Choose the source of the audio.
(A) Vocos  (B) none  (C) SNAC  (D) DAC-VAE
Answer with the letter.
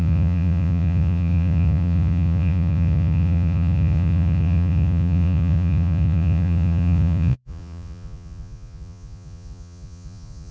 A